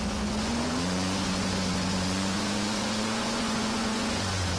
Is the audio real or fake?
fake